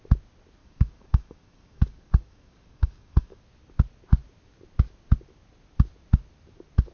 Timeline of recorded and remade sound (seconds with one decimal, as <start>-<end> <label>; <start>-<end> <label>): 0.0-0.6 recorded; 0.6-3.4 remade; 3.4-6.9 recorded